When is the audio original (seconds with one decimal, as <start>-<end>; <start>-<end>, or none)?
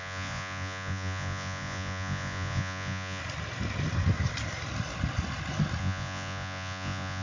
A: 3.2-5.8